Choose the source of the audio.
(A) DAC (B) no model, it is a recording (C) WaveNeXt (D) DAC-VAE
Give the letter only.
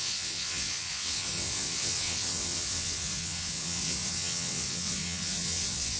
C